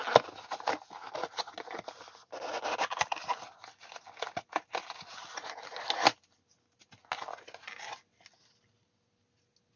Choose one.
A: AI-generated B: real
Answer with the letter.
B